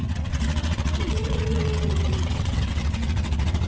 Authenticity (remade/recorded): remade